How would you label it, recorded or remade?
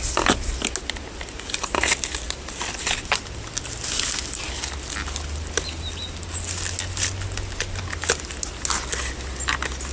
recorded